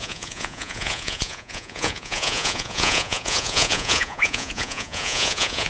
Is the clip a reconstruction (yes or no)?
yes